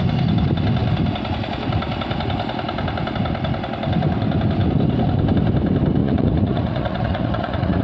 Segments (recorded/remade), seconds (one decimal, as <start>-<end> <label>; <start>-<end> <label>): 0.0-6.0 recorded; 6.0-7.8 remade